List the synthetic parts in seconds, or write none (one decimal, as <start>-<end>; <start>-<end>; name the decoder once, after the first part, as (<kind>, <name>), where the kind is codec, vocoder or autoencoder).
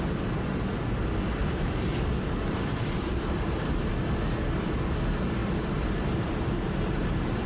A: 1.4-3.9 (vocoder, BigVGAN v2); 5.4-7.5